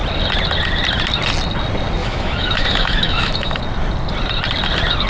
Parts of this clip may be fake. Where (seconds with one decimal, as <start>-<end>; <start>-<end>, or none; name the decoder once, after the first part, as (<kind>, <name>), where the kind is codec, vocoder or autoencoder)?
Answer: 2.0-3.6 (autoencoder, DAC-VAE)